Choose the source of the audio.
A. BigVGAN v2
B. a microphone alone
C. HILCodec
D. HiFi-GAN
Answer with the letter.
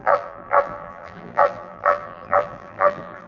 A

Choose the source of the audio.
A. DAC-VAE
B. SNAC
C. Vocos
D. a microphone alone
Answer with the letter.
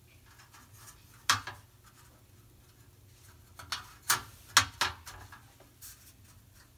D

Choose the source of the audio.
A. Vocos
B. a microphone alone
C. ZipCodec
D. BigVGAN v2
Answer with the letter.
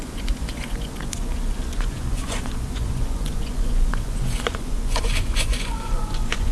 A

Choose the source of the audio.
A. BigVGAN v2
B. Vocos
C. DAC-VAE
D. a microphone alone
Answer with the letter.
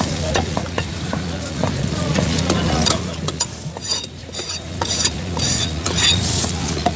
B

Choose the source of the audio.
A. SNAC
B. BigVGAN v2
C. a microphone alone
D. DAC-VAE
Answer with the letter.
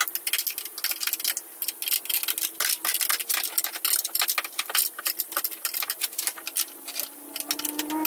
C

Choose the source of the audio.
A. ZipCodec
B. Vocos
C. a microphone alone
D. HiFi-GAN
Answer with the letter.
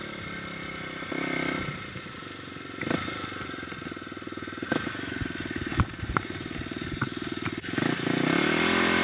C